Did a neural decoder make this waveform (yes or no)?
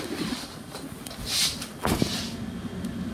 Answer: no